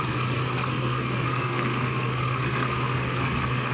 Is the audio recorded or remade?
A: remade